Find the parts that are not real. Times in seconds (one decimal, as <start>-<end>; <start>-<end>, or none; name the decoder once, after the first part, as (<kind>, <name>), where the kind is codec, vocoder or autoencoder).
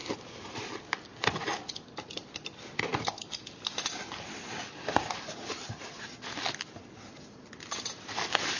none